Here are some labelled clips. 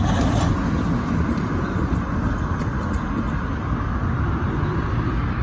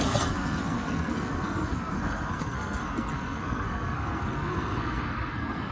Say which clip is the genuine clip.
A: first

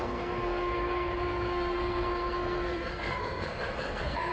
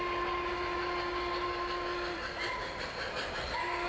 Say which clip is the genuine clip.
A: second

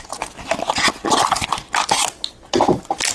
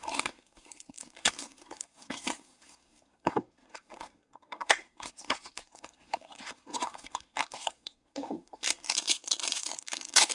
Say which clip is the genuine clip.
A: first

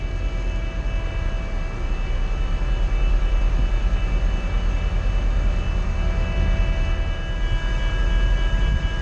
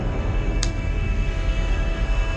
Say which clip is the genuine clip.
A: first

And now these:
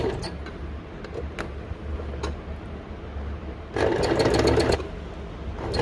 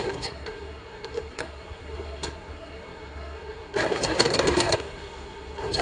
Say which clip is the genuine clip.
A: first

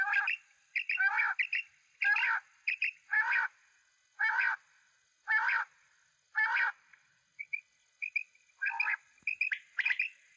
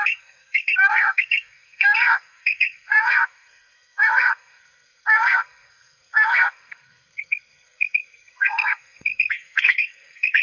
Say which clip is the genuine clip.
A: first